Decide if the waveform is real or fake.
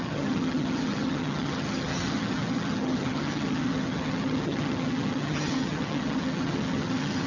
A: fake